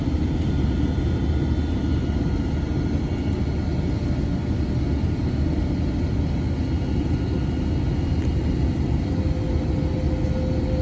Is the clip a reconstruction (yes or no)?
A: no